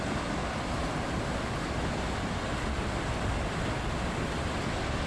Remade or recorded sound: remade